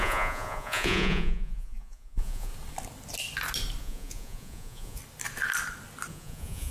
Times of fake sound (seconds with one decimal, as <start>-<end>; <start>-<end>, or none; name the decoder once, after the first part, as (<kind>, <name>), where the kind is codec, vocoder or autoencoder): 0.0-2.5 (vocoder, Vocos); 3.8-5.0; 6.1-6.7